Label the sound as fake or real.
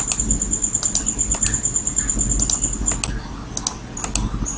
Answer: real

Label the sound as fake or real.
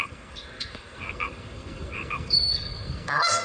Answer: fake